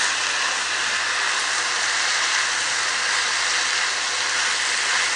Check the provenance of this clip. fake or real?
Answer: real